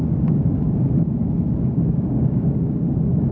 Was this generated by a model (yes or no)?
yes